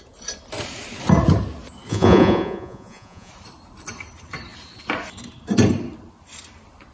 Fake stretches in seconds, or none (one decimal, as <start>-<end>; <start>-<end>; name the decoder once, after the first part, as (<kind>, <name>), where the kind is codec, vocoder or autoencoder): 1.9-3.3 (vocoder, Vocos)

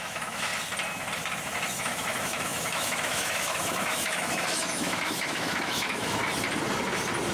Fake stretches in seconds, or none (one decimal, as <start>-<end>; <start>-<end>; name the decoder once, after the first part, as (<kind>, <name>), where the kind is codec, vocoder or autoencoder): 0.0-0.5 (autoencoder, DAC-VAE); 1.8-6.2

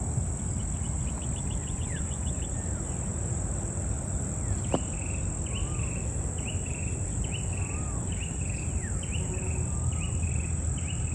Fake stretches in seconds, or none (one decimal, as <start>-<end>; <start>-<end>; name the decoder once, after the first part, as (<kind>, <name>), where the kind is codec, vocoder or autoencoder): 1.6-2.4 (vocoder, Vocos)

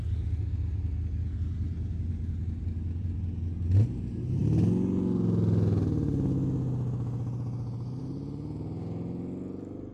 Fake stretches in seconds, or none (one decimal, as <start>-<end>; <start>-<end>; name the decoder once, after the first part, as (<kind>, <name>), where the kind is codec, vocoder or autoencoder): none

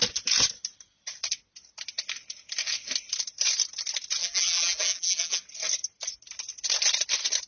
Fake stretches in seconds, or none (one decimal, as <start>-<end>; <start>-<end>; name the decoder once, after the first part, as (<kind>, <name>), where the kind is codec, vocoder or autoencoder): 4.2-5.4 (vocoder, BigVGAN v2)